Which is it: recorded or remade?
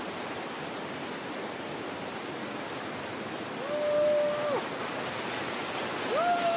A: recorded